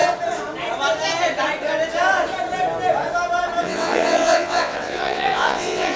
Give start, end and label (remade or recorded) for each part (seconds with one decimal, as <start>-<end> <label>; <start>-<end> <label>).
0.0-3.6 recorded; 3.6-6.0 remade

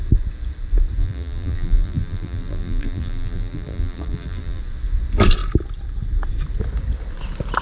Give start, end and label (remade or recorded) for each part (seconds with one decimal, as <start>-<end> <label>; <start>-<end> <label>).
0.0-1.0 recorded; 1.0-4.6 remade; 4.6-7.6 recorded

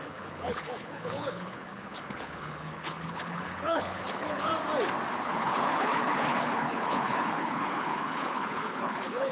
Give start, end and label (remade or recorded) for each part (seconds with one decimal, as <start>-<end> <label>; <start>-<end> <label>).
0.0-4.5 remade; 4.5-5.2 recorded; 5.2-9.3 remade

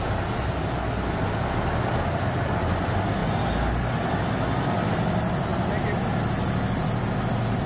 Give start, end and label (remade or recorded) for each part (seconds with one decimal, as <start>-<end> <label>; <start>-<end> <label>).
0.0-7.7 recorded

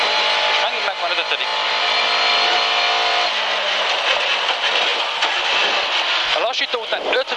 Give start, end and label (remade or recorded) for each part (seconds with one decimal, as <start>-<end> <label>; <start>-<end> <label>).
0.0-4.9 recorded; 4.9-6.6 remade; 6.6-7.4 recorded

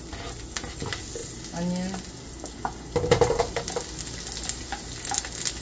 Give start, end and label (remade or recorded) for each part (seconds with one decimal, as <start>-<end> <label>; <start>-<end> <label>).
0.0-5.6 recorded

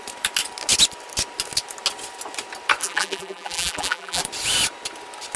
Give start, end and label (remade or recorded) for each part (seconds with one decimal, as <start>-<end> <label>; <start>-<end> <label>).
0.0-2.8 recorded; 2.8-4.2 remade; 4.2-5.4 recorded

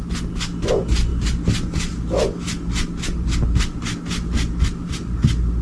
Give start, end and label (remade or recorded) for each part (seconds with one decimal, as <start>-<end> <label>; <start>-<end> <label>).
0.0-5.6 recorded